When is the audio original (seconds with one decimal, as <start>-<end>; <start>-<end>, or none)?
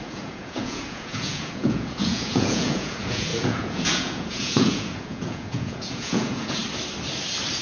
6.6-7.6